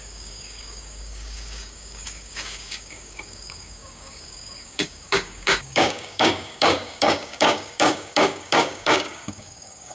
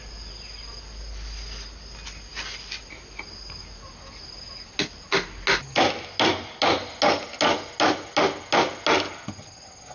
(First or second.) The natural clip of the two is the second